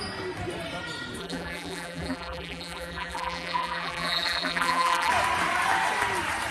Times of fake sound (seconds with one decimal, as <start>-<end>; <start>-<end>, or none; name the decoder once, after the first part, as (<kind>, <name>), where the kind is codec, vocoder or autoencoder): 1.2-5.1 (vocoder, BigVGAN v2)